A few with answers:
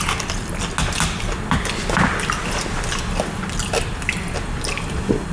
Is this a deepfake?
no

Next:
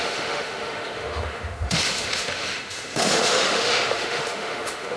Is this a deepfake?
yes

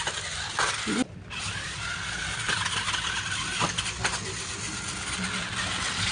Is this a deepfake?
no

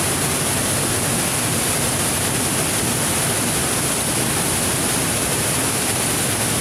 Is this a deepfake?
no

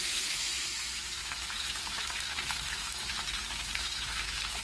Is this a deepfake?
yes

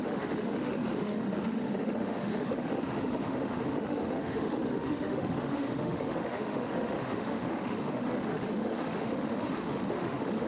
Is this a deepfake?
yes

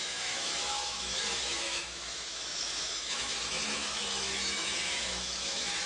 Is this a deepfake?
yes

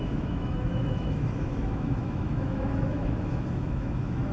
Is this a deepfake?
yes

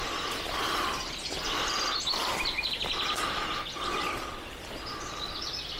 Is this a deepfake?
no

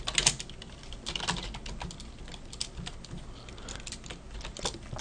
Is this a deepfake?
no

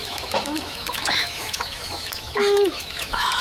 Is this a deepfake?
yes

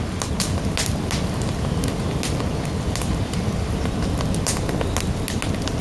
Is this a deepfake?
no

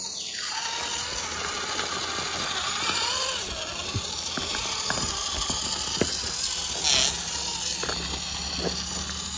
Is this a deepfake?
no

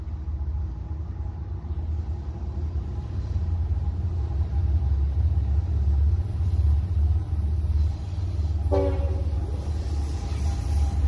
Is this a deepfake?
no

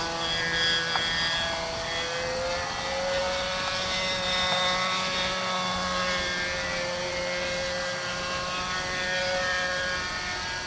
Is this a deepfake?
no